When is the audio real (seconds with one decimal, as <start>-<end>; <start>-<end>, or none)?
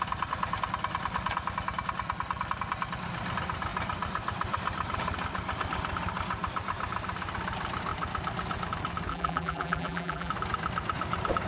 0.0-9.1; 10.3-11.5